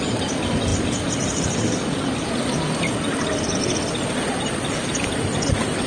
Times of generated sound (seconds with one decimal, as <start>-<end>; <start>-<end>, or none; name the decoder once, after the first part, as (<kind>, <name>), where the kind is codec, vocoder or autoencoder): none